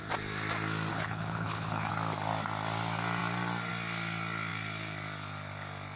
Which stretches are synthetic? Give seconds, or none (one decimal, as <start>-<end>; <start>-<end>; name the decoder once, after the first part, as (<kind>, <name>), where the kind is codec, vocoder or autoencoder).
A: 0.9-1.9 (codec, HILCodec)